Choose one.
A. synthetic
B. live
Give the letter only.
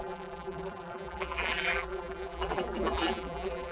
A